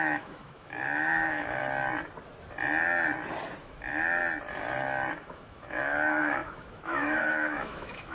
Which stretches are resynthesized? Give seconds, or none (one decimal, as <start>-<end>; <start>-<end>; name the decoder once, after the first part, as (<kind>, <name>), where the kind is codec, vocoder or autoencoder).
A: 0.0-1.6 (autoencoder, DAC-VAE); 3.6-4.2; 5.1-8.1